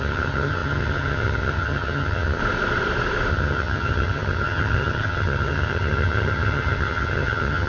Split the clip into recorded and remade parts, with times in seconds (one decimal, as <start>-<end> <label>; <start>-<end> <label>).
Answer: 0.0-2.4 remade; 2.4-3.3 recorded; 3.3-7.7 remade